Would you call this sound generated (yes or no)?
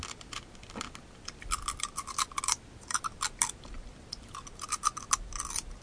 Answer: no